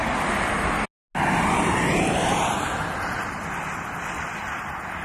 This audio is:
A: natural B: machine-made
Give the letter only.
A